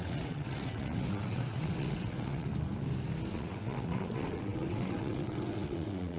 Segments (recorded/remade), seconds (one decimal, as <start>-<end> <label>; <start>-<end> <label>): 0.0-2.5 remade; 2.5-3.3 recorded; 3.3-6.2 remade